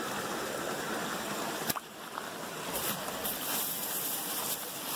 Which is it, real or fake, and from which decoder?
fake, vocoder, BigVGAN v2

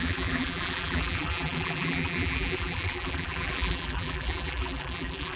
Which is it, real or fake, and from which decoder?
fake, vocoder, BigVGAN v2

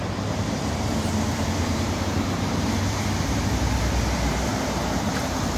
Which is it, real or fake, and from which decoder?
fake, vocoder, BigVGAN v2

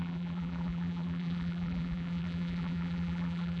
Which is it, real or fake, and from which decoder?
fake, vocoder, BigVGAN v2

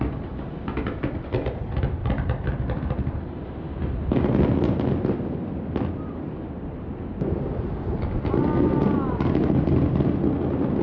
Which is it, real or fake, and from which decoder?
real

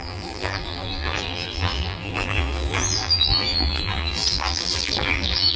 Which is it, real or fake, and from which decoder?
fake, vocoder, BigVGAN v2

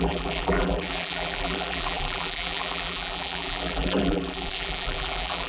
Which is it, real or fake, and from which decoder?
fake, vocoder, BigVGAN v2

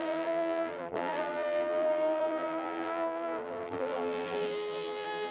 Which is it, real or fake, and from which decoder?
fake, vocoder, BigVGAN v2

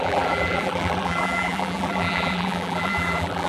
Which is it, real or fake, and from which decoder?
fake, vocoder, BigVGAN v2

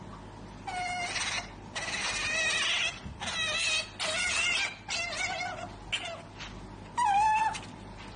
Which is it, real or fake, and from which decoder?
real